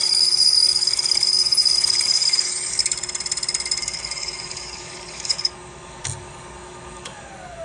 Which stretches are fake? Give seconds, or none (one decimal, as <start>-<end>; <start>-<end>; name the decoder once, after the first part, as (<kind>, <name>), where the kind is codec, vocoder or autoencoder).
0.0-2.8 (codec, DAC); 3.8-7.6